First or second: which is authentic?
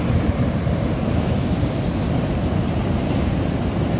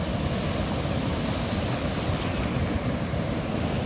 second